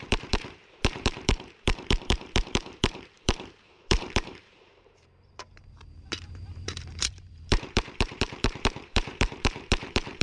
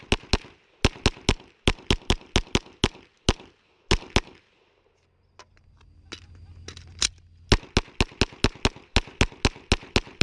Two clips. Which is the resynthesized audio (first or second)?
first